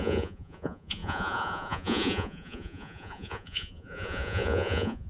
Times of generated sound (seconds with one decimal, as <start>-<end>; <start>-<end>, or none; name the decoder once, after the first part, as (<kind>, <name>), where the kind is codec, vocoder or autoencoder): 0.0-5.1 (vocoder, Vocos)